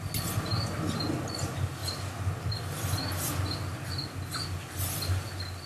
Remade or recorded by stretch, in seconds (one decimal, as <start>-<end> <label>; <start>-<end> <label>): 0.0-5.7 recorded